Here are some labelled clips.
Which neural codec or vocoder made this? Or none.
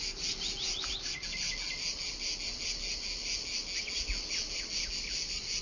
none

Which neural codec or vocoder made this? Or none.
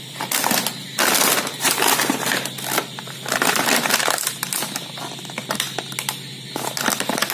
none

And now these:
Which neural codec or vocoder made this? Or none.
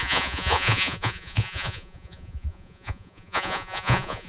vocoder, Vocos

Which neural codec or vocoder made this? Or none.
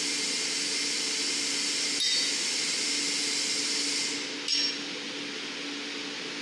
none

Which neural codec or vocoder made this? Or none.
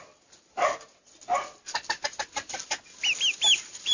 none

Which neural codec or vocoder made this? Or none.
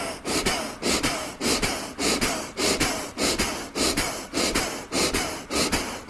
none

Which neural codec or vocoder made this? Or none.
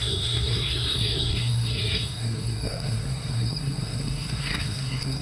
codec, SNAC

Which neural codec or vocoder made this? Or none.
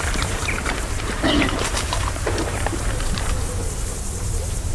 vocoder, BigVGAN v2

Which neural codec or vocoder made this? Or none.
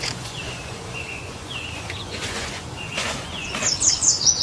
vocoder, Vocos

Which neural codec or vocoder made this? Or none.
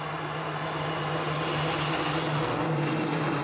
none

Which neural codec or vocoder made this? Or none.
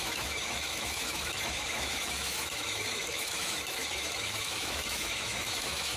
autoencoder, DAC-VAE